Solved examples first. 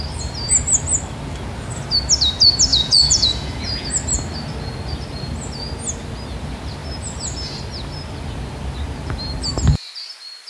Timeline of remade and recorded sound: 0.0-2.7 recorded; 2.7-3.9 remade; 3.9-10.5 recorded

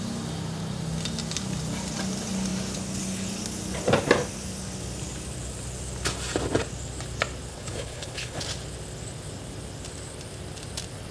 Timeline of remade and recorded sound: 0.0-7.5 recorded; 7.5-8.4 remade; 8.4-11.1 recorded